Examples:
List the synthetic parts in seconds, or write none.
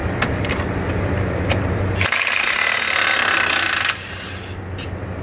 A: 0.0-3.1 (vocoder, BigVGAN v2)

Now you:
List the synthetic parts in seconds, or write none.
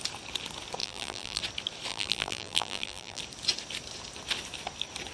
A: 0.8-1.4 (vocoder, BigVGAN v2); 1.9-3.2